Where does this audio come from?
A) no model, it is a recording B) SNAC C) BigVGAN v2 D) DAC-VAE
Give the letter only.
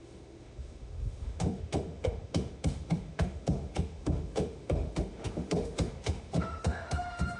D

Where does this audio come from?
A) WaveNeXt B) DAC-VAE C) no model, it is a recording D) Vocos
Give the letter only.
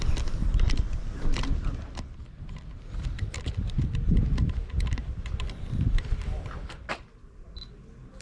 C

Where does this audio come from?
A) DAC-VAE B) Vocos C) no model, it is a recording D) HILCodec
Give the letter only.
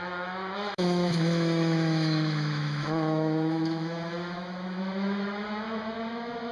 A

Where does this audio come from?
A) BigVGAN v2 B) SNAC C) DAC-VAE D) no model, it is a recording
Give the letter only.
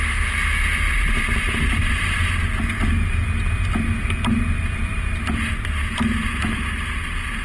D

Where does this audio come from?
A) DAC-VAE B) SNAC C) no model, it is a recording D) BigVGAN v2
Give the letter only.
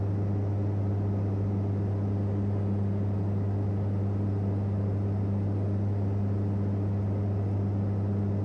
C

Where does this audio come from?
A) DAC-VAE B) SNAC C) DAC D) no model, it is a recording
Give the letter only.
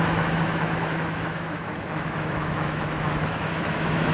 A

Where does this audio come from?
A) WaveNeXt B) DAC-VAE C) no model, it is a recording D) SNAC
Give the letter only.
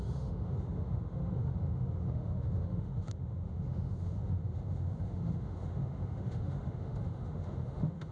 B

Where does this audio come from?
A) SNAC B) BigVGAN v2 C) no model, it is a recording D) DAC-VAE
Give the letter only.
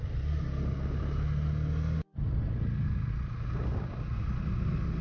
C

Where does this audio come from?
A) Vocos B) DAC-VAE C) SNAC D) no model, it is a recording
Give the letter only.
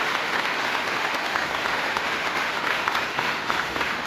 B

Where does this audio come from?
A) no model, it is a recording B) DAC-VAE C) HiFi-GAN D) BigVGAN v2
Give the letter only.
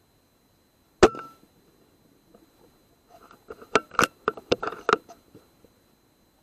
A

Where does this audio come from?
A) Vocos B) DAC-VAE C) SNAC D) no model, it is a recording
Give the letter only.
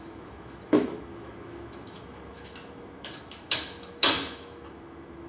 B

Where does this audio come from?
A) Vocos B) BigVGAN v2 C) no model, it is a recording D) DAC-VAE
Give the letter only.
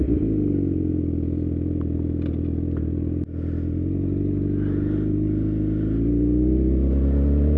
C